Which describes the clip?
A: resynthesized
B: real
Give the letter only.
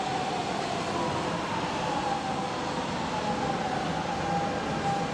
B